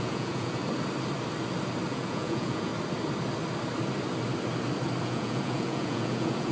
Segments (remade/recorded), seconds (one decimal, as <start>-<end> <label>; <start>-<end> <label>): 0.0-0.6 remade; 0.6-1.9 recorded; 1.9-2.7 remade; 2.7-5.0 recorded; 5.0-6.5 remade